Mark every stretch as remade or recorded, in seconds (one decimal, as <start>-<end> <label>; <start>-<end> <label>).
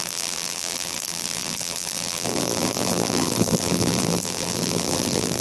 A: 0.0-5.4 remade